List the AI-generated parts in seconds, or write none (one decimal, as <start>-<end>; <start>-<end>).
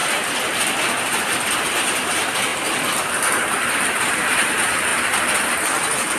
1.0-2.5; 3.7-4.9